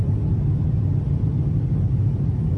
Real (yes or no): yes